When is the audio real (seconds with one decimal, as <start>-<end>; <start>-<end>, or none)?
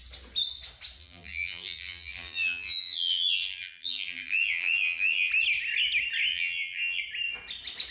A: 0.0-1.0; 5.3-6.3; 7.0-7.9